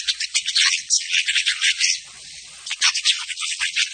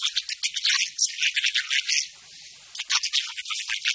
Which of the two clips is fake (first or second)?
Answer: first